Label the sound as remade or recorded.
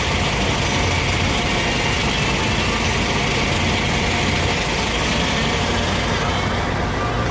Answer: recorded